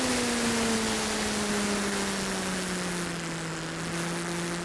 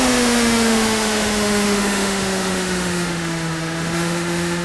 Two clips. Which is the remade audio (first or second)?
second